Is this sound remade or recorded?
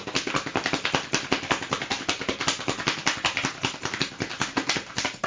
recorded